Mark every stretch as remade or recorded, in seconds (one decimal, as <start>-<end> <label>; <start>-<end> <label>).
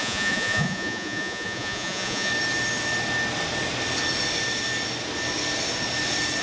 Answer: 0.0-2.3 remade; 2.3-6.4 recorded